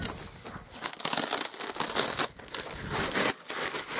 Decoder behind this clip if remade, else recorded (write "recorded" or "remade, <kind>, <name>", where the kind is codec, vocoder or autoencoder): recorded